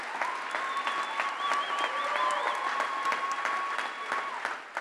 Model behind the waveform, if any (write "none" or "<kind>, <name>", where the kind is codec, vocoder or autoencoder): none